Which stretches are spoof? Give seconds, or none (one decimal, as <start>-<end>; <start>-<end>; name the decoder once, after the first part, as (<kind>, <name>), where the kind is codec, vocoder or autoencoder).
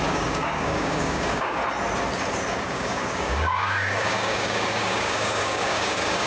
0.0-1.6 (codec, DAC); 2.7-6.3